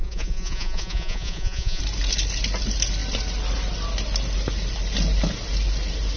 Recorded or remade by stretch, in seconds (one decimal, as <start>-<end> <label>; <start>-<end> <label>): 0.0-1.8 remade; 1.8-6.2 recorded